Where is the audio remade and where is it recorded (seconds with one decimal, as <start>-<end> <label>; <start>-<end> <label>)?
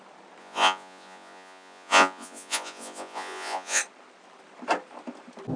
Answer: 0.0-0.4 recorded; 0.4-3.8 remade; 3.8-5.6 recorded